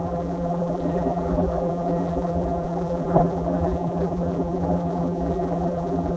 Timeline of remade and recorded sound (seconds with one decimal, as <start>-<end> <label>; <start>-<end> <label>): 0.0-6.2 remade